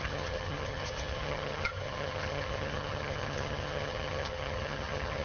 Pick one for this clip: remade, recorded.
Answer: remade